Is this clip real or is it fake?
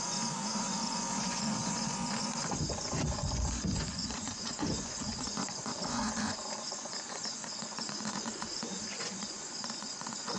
fake